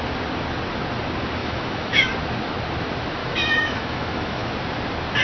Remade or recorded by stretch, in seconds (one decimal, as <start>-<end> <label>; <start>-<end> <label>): 0.0-1.4 recorded; 1.4-2.1 remade; 2.1-3.2 recorded; 3.2-4.5 remade; 4.5-5.2 recorded